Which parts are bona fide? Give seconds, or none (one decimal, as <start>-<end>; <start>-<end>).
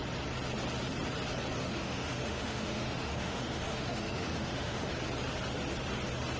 0.0-1.6; 4.9-6.4